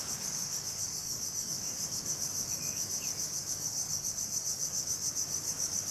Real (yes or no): no